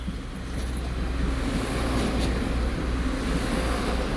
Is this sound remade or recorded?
recorded